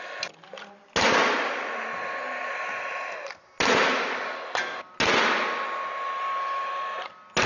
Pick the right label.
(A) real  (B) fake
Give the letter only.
A